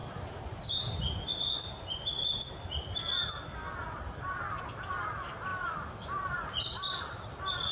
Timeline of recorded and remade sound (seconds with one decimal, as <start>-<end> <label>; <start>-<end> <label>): 0.0-5.5 recorded; 5.5-7.0 remade; 7.0-7.7 recorded